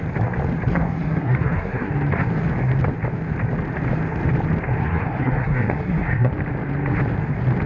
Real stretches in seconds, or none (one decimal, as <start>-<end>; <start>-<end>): 0.0-0.7; 1.9-4.8; 6.3-7.7